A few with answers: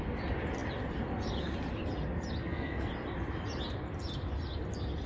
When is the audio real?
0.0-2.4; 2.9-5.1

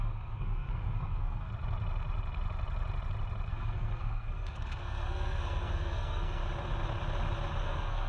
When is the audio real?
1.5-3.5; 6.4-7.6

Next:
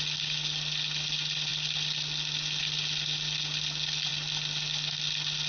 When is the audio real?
0.0-5.5

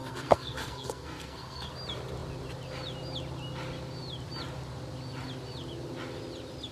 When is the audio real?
1.7-6.7